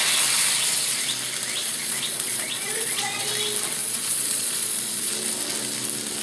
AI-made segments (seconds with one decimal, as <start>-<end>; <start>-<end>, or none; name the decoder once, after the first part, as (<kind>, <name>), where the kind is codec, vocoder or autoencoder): 1.6-3.3 (vocoder, Vocos); 3.8-5.1